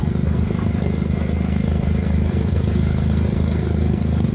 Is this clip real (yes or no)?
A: no